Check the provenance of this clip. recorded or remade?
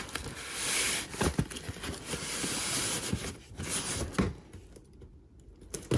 recorded